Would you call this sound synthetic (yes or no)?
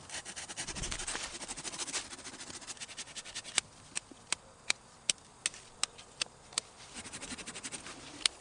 no